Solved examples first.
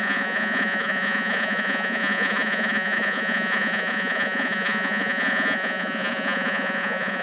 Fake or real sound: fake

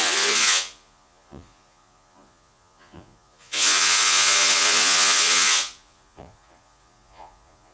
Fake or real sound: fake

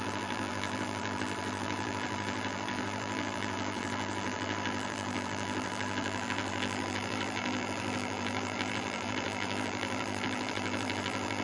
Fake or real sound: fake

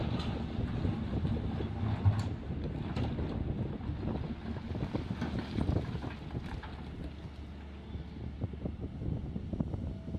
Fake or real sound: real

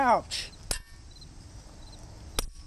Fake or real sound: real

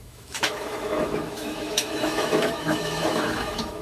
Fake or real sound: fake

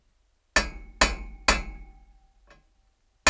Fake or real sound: real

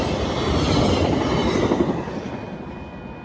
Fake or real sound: real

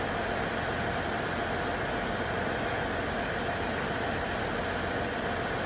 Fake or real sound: real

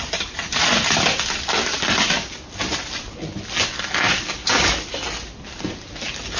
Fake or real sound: real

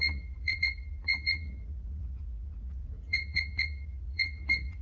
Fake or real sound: fake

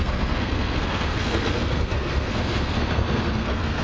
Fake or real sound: fake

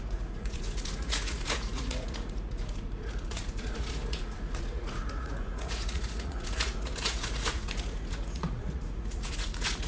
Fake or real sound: fake